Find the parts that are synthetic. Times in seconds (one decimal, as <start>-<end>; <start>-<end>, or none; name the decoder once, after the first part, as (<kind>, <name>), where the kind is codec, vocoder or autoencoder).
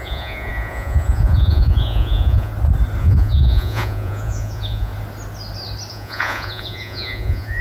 0.0-2.5 (vocoder, Vocos); 3.0-4.9; 5.9-7.6